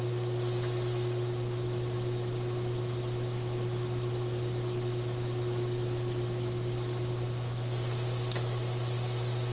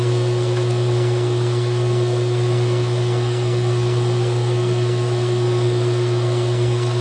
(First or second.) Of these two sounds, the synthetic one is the second